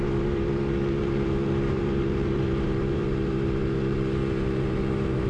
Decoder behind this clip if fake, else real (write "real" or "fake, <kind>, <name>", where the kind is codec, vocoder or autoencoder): fake, vocoder, BigVGAN v2